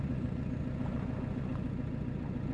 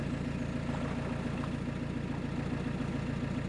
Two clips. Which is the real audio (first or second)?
second